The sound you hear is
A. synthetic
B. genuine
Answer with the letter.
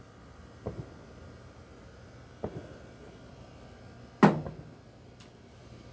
B